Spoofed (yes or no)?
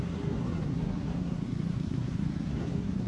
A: yes